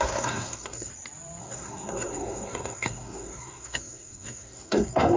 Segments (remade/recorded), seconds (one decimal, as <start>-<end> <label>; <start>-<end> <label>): 0.0-0.9 remade; 0.9-1.4 recorded; 1.4-5.2 remade